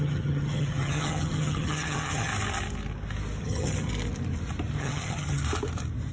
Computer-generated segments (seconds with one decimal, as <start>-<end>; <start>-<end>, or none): 0.0-2.3; 3.4-3.9; 4.8-5.4